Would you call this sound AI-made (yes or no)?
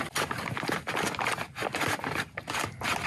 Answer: no